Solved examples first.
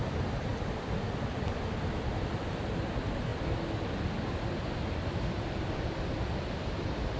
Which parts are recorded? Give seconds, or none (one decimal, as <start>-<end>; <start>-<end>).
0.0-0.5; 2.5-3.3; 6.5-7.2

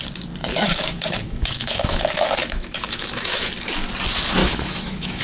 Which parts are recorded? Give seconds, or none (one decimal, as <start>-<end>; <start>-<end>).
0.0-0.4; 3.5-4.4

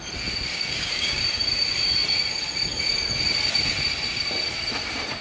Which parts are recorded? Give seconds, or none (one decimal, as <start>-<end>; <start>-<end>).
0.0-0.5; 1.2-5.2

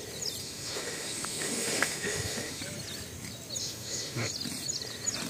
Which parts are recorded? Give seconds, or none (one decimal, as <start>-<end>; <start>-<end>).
0.0-0.4; 2.6-3.6; 4.3-5.3

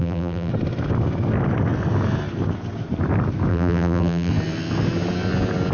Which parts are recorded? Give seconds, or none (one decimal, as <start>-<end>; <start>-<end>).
0.5-3.5; 4.3-5.7

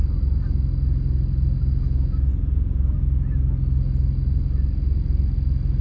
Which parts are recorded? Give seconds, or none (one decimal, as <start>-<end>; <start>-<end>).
0.0-1.6; 2.3-5.8

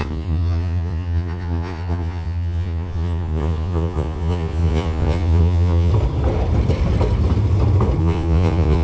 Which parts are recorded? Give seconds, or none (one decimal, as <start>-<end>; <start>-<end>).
5.9-8.0

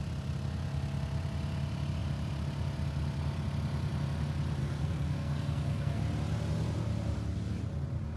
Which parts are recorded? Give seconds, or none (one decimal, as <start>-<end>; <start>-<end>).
0.0-4.6; 6.0-8.2